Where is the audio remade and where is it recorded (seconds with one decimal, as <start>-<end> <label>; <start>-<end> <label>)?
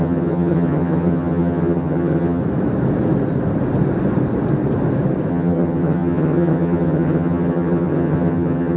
0.0-2.4 remade; 2.4-5.3 recorded; 5.3-8.8 remade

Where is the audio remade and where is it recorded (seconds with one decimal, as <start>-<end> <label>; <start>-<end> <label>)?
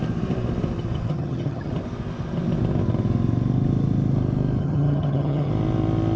0.0-1.1 recorded; 1.1-1.7 remade; 1.7-4.6 recorded; 4.6-5.5 remade; 5.5-6.2 recorded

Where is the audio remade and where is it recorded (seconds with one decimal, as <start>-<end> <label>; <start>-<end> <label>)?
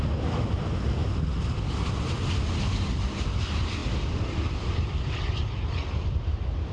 0.0-6.7 recorded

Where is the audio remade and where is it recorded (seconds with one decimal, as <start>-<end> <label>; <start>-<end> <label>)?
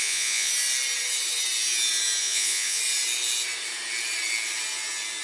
0.0-0.5 remade; 0.5-2.2 recorded; 2.2-2.8 remade; 2.8-5.2 recorded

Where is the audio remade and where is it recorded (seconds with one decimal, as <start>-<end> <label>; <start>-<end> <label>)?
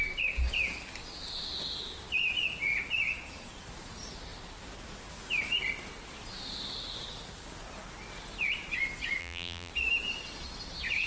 0.0-9.2 recorded; 9.2-9.7 remade; 9.7-11.1 recorded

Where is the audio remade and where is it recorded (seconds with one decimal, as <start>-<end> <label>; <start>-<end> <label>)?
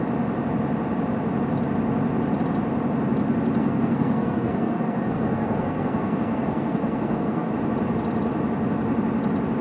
0.0-3.6 recorded; 3.6-7.5 remade; 7.5-9.6 recorded